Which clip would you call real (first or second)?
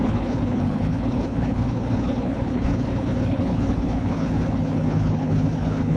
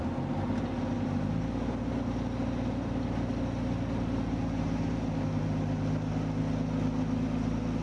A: second